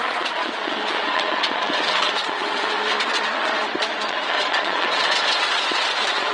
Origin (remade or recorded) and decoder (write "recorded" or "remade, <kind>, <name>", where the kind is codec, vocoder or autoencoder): remade, vocoder, Vocos